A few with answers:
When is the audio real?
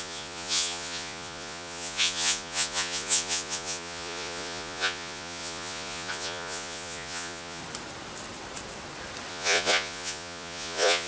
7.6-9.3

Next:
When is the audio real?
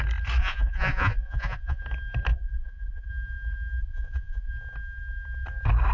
0.0-0.4; 1.8-2.3; 3.1-3.8; 4.5-5.9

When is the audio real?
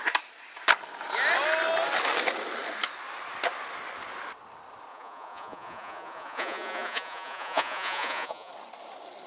0.0-4.9; 8.5-9.3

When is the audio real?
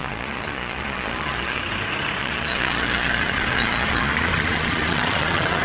1.6-2.2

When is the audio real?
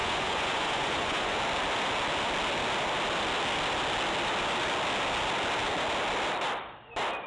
1.4-7.3